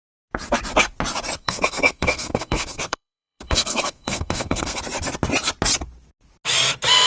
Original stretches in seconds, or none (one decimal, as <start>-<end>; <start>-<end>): 0.0-1.4; 4.8-7.1